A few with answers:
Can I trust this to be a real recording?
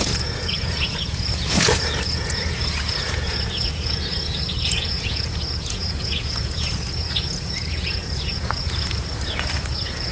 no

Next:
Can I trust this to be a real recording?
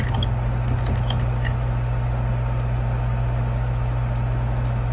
yes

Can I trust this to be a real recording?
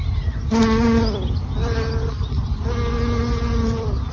yes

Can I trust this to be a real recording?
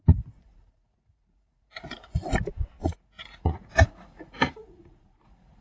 no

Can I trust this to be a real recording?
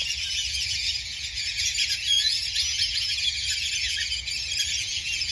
no